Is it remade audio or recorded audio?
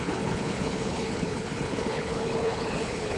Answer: remade